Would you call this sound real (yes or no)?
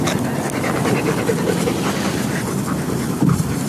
yes